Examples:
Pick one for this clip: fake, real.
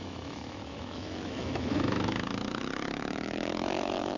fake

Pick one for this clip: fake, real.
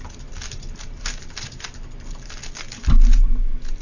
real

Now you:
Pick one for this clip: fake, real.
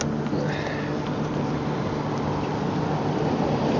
real